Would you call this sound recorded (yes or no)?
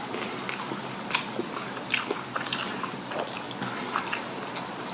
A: yes